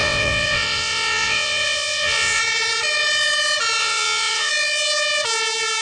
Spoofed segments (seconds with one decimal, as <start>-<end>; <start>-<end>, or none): 0.0-2.4; 3.8-4.5